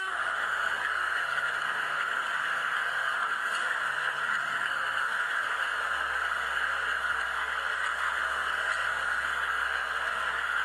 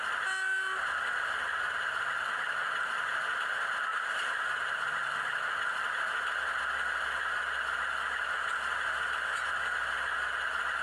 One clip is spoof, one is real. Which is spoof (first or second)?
first